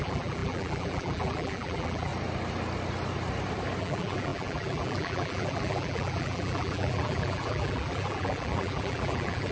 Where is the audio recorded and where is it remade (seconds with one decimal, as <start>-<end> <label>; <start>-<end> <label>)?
0.0-2.1 remade; 2.1-3.8 recorded; 3.8-9.5 remade